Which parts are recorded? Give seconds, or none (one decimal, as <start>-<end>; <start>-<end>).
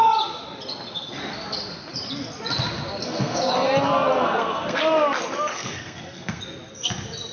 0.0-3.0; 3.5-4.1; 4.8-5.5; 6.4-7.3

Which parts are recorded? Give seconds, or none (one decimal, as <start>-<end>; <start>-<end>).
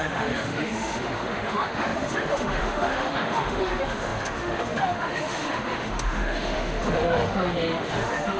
none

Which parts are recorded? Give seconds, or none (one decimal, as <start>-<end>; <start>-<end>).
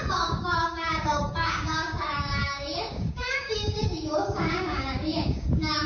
none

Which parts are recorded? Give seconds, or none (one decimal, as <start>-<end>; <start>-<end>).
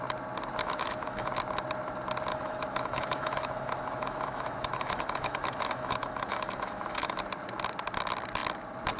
0.0-0.6; 1.3-2.3; 7.2-9.0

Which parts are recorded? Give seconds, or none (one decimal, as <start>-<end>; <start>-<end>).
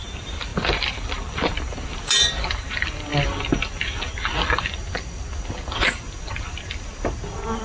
0.0-7.6